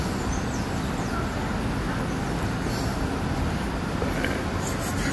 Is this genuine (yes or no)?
yes